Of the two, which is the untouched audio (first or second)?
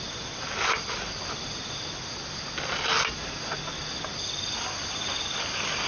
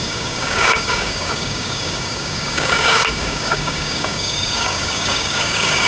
first